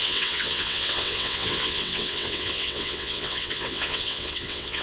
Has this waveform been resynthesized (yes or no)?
yes